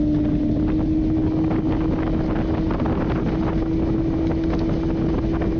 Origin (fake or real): real